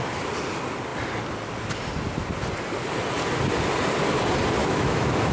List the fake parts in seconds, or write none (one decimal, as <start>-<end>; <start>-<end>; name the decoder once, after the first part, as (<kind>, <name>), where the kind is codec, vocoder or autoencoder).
4.6-5.3 (autoencoder, DAC-VAE)